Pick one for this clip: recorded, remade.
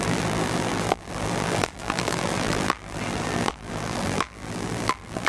remade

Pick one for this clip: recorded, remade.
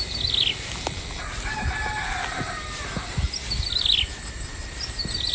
recorded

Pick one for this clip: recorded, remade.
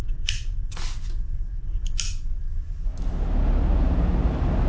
recorded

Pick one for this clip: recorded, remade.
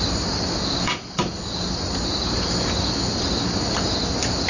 recorded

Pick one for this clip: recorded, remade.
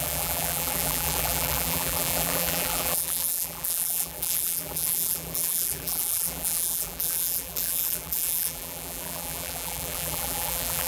remade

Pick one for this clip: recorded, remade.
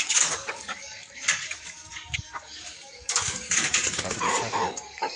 remade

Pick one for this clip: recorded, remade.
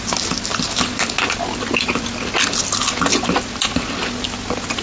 recorded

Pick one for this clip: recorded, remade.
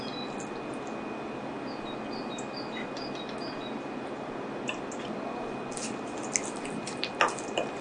recorded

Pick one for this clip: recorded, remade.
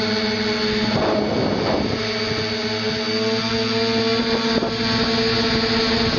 recorded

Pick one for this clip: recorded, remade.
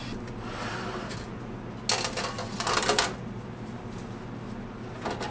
recorded